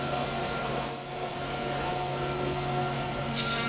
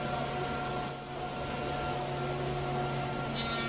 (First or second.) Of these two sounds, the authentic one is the second